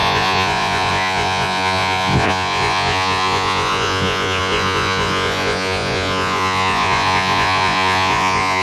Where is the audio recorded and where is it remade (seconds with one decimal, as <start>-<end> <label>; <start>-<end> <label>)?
0.0-8.6 remade

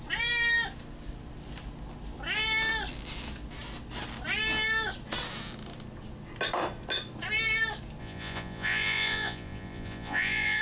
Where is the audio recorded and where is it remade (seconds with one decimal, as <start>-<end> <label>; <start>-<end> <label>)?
0.0-8.0 recorded; 8.0-10.6 remade

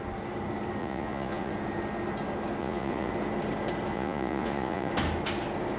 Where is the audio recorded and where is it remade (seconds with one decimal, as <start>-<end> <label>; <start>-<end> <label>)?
0.0-0.8 recorded; 0.8-1.5 remade; 1.5-2.6 recorded; 2.6-3.1 remade; 3.1-3.9 recorded; 3.9-4.9 remade; 4.9-5.8 recorded

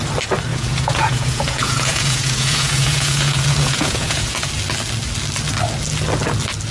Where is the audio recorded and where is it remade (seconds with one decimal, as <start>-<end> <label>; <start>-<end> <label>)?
0.0-0.5 recorded; 0.5-4.5 remade; 4.5-6.7 recorded

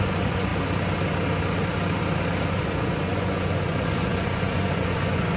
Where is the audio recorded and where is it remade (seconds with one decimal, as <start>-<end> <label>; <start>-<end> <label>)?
0.0-0.5 remade; 0.5-2.4 recorded; 2.4-5.4 remade

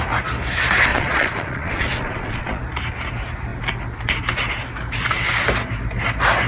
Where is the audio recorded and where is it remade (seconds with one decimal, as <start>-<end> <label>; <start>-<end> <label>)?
0.0-0.9 recorded; 0.9-2.6 remade; 2.6-6.5 recorded

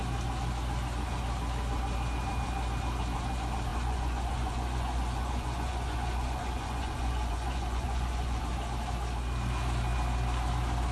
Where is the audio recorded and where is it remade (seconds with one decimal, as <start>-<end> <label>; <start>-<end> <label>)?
0.0-3.7 recorded; 3.7-8.4 remade; 8.4-10.9 recorded